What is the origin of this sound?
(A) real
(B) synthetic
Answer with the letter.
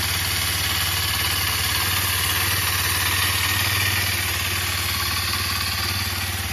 A